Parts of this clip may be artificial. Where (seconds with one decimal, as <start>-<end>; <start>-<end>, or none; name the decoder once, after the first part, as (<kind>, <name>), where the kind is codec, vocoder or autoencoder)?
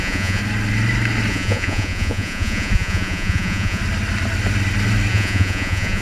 0.0-0.4 (vocoder, Vocos); 1.3-3.8; 5.1-6.0